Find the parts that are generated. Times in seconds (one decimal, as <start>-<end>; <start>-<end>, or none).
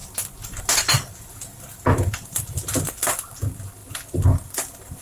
none